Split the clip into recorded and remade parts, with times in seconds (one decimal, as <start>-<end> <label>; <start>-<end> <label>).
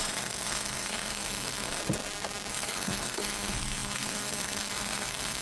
0.0-1.8 remade; 1.8-2.5 recorded; 2.5-5.4 remade